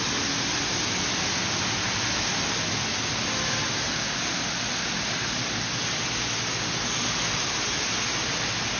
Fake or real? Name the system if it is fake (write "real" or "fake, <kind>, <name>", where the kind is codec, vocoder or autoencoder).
real